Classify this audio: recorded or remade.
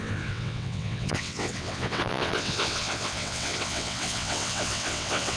remade